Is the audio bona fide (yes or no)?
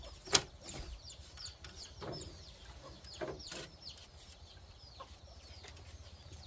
no